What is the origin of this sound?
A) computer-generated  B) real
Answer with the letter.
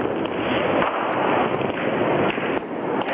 B